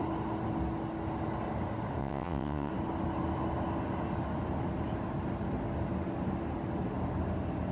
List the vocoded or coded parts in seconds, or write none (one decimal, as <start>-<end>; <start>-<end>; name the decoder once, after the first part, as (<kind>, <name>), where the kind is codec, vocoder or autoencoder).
2.0-2.7 (vocoder, WaveNeXt)